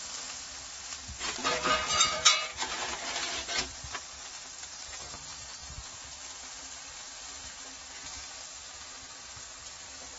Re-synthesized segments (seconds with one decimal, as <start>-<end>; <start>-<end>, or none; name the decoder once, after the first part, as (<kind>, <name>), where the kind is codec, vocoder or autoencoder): 1.4-2.8 (vocoder, Vocos)